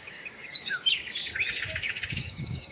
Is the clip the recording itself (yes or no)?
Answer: no